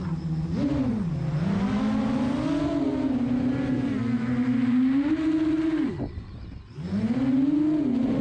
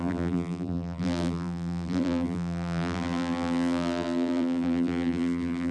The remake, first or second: second